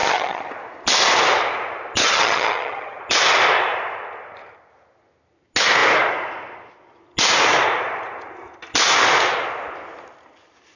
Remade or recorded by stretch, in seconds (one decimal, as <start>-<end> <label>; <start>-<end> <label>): 0.0-0.5 remade; 0.5-2.0 recorded; 2.0-3.0 remade; 3.0-10.8 recorded